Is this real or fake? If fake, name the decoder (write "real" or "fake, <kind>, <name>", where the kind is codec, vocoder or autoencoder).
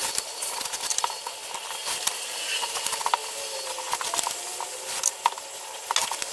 real